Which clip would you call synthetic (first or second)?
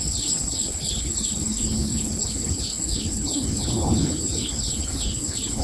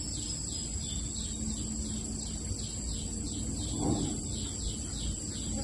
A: first